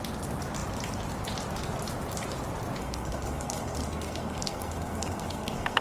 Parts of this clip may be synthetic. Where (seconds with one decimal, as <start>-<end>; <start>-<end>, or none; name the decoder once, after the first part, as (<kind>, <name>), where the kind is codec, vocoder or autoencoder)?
2.8-5.8 (codec, SNAC)